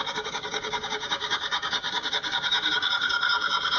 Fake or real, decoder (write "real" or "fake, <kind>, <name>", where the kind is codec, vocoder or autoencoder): fake, codec, DAC